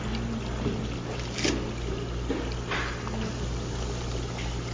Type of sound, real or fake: real